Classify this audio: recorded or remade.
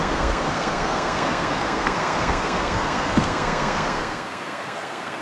remade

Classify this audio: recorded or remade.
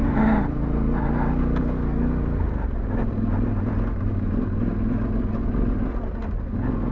recorded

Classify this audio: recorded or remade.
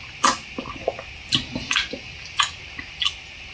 recorded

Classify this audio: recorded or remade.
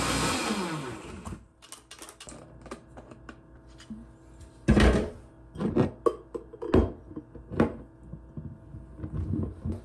recorded